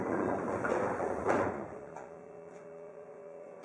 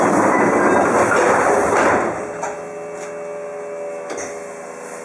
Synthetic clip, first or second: first